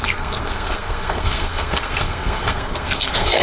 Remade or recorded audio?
remade